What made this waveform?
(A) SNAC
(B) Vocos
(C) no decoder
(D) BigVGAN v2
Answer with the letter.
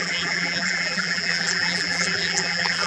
D